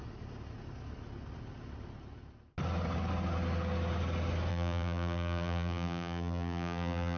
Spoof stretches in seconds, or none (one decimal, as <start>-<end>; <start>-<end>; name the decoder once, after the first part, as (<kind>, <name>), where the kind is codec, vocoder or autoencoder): 4.5-7.2 (vocoder, BigVGAN v2)